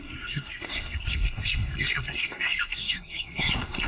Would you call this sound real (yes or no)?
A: no